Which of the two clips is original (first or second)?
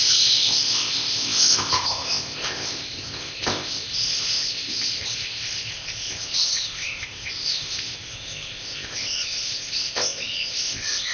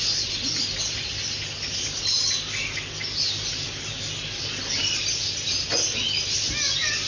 second